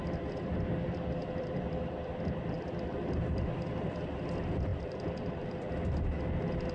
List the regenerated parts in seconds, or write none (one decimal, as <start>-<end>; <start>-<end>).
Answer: 1.2-4.0; 4.7-5.7